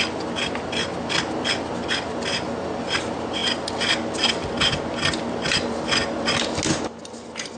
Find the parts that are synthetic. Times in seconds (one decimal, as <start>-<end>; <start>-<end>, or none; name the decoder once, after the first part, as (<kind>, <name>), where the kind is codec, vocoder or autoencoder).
none